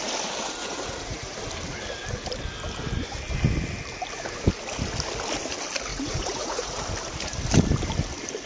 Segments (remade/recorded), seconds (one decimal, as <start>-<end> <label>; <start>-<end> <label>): 0.0-0.6 recorded; 0.6-1.4 remade; 1.4-5.9 recorded; 5.9-6.8 remade; 6.8-8.5 recorded

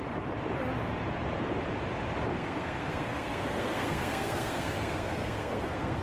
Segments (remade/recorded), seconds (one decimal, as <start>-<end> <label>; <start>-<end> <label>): 0.0-2.3 recorded; 2.3-6.0 remade

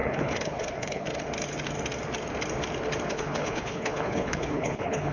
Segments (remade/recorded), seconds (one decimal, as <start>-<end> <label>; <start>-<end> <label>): 0.0-1.1 remade; 1.1-3.1 recorded; 3.1-5.1 remade

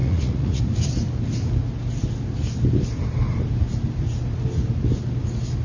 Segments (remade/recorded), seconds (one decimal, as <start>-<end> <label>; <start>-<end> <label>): 0.0-0.6 remade; 0.6-5.6 recorded

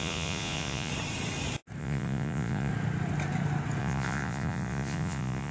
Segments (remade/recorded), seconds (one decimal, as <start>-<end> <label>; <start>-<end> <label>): 0.0-0.9 remade; 0.9-1.8 recorded; 1.8-2.7 remade; 2.7-3.8 recorded; 3.8-5.5 remade